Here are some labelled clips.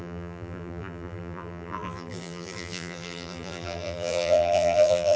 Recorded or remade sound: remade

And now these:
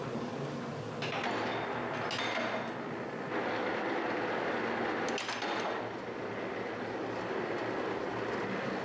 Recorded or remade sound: recorded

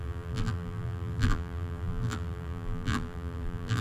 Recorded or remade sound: remade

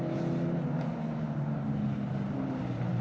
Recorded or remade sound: recorded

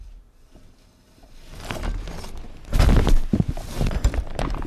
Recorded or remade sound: recorded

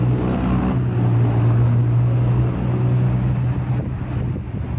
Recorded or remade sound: recorded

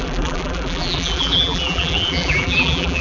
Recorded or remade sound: remade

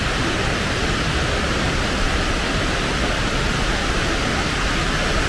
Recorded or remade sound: recorded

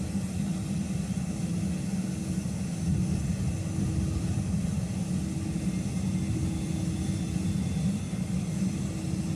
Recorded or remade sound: recorded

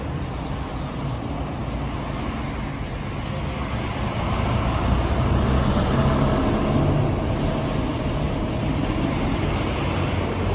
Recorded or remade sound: recorded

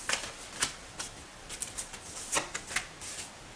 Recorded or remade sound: recorded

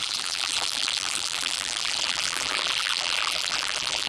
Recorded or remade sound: remade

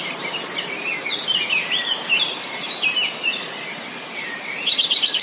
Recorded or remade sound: remade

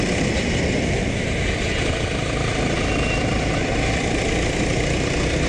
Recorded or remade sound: remade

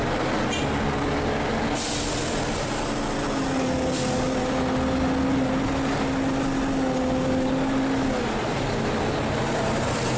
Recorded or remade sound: recorded